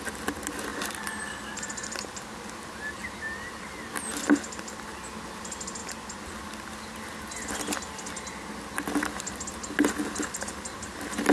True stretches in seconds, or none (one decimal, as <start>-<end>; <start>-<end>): 0.0-11.3